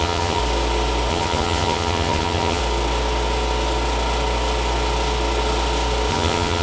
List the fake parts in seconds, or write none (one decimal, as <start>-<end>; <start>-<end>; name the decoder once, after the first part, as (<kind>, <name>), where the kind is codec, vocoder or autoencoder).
0.0-0.4 (vocoder, HiFi-GAN); 1.1-2.6; 6.1-6.6